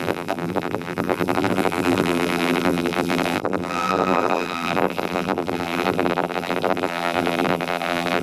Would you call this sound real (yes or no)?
no